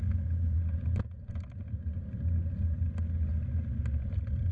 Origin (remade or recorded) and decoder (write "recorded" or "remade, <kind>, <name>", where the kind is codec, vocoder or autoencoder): recorded